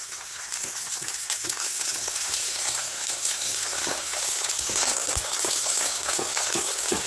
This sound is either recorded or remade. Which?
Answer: remade